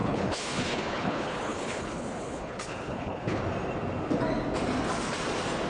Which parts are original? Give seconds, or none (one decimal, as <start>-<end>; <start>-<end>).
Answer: 3.4-5.7